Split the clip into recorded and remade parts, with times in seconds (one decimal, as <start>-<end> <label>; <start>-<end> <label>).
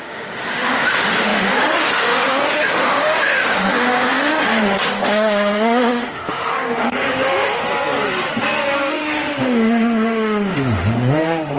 0.0-7.6 remade; 7.6-8.9 recorded; 8.9-11.6 remade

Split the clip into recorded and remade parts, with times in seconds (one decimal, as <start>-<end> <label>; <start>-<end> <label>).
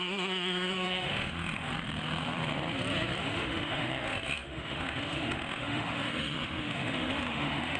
0.0-1.7 remade; 1.7-3.2 recorded; 3.2-7.8 remade